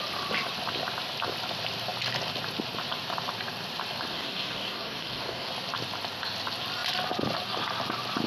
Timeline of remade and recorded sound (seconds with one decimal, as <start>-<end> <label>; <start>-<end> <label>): 0.0-4.1 recorded; 4.1-5.5 remade; 5.5-8.3 recorded